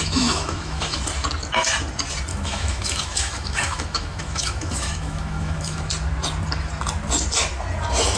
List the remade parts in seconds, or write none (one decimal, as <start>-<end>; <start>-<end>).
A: 0.0-1.0; 2.3-5.9

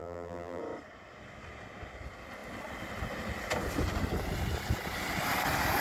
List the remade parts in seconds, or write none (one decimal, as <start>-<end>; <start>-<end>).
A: 0.0-0.6

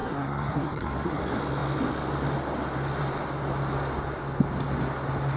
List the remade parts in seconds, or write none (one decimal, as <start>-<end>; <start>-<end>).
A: 0.0-1.2